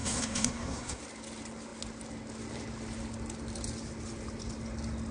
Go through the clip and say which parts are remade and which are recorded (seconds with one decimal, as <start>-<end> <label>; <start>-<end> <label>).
0.0-1.0 remade; 1.0-5.1 recorded